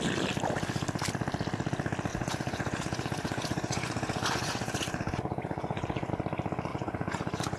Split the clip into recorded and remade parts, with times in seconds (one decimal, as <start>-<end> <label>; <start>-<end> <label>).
0.0-2.1 recorded; 2.1-6.1 remade; 6.1-6.7 recorded; 6.7-7.6 remade